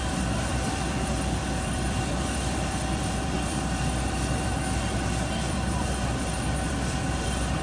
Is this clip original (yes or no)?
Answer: no